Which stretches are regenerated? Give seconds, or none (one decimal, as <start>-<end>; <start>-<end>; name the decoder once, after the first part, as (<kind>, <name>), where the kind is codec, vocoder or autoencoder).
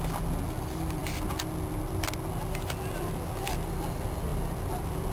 none